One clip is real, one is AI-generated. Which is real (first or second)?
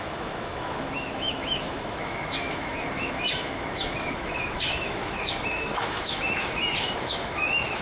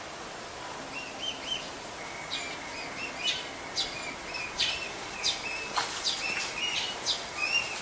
second